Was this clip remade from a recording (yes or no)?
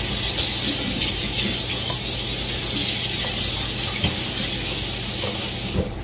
no